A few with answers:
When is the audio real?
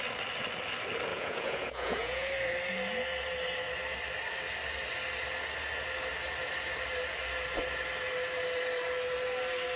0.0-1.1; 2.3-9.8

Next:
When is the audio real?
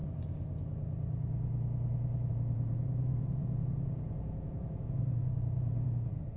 0.0-2.3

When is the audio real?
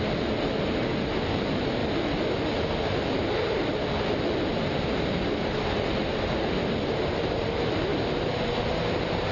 0.0-9.3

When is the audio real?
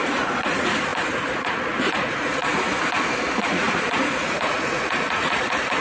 2.7-3.4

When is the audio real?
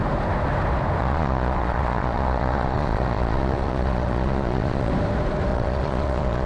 0.0-1.0; 4.9-5.5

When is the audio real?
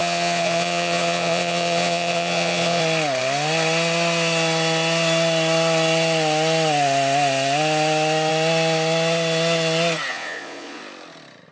2.8-10.1; 10.8-11.5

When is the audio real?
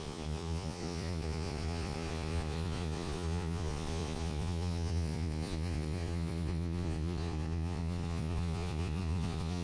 none